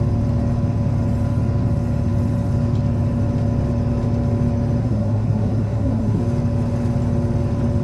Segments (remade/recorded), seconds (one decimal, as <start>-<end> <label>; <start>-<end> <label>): 0.0-4.8 recorded; 4.8-6.2 remade; 6.2-7.8 recorded

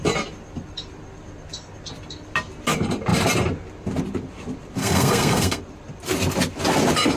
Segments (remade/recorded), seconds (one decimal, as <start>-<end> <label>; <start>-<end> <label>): 0.0-4.8 recorded; 4.8-5.6 remade; 5.6-7.2 recorded

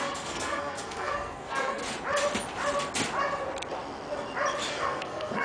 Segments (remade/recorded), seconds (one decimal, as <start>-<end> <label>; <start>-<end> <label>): 0.0-1.8 remade; 1.8-4.7 recorded; 4.7-5.4 remade